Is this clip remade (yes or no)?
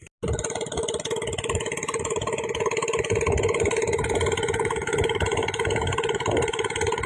no